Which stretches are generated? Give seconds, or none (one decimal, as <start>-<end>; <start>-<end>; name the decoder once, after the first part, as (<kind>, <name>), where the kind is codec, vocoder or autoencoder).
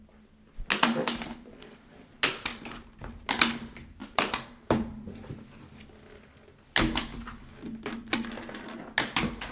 4.0-5.6 (vocoder, BigVGAN v2)